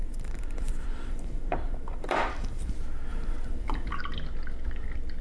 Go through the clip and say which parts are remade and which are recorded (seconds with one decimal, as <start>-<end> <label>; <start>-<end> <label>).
0.0-2.7 remade; 2.7-3.1 recorded; 3.1-4.0 remade; 4.0-5.2 recorded